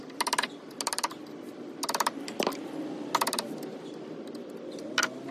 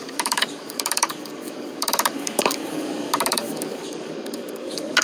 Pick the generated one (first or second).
second